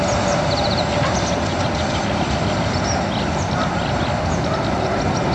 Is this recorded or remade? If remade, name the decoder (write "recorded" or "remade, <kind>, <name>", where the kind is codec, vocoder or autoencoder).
recorded